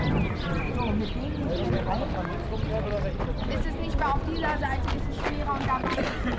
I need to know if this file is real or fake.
real